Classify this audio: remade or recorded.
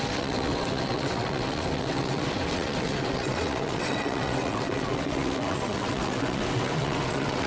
remade